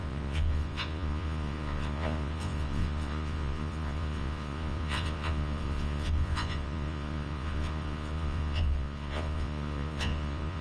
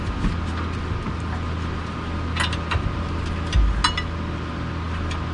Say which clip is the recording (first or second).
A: second